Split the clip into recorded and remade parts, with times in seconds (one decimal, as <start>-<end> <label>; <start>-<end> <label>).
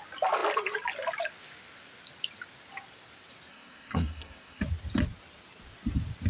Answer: 0.0-3.5 recorded; 3.5-4.6 remade; 4.6-6.3 recorded